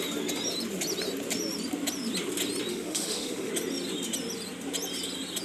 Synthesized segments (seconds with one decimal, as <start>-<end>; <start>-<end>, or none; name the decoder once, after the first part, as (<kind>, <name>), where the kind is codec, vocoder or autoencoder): 2.7-3.5 (autoencoder, DAC-VAE)

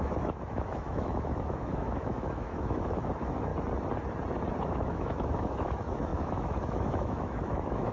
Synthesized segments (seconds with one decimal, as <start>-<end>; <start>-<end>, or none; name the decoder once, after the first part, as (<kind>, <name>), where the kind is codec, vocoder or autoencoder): 0.0-3.5 (autoencoder, DAC-VAE); 4.6-7.9